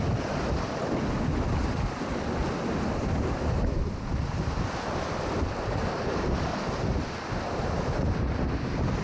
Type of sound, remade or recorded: recorded